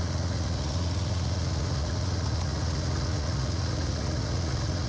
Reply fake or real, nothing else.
fake